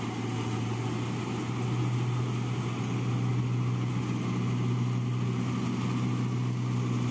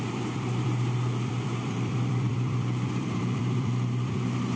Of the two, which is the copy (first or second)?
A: second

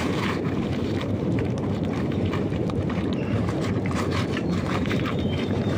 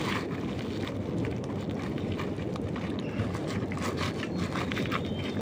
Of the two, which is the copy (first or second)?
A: first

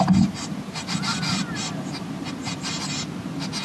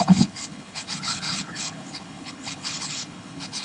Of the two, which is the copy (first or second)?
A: second